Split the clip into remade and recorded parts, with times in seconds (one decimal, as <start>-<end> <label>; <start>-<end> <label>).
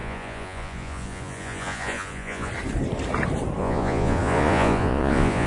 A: 0.0-2.5 remade; 2.5-3.6 recorded; 3.6-5.5 remade